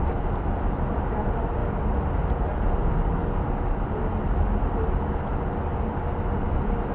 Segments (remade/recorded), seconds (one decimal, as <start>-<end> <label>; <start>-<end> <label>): 0.0-6.9 recorded